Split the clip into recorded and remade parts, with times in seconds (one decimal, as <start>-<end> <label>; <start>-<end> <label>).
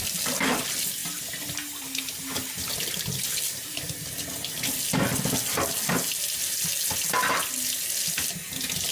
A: 0.0-8.9 recorded